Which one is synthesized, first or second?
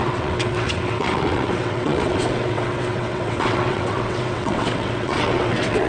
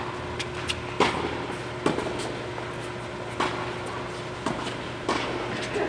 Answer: first